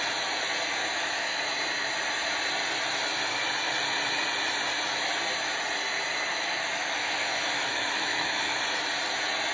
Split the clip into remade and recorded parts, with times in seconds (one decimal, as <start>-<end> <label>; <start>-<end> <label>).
0.0-0.8 recorded; 0.8-1.4 remade; 1.4-6.3 recorded; 6.3-8.6 remade; 8.6-9.5 recorded